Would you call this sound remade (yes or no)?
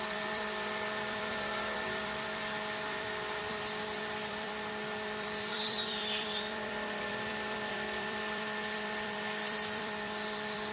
yes